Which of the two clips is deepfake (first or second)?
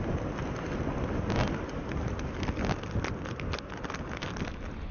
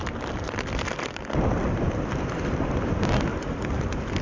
second